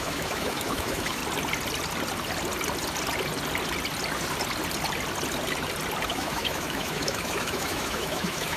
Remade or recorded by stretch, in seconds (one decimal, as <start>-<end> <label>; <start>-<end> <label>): 0.0-1.2 remade; 1.2-6.1 recorded; 6.1-8.6 remade